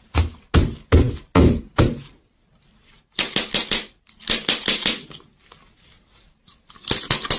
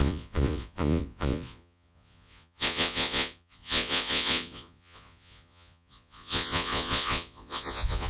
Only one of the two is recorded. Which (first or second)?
first